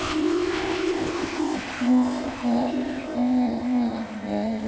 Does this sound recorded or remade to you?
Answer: remade